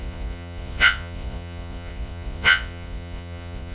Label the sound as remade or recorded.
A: remade